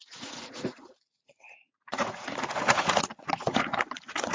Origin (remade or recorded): remade